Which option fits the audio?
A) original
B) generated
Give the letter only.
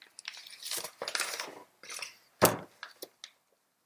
A